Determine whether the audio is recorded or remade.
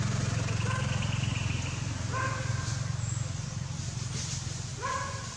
recorded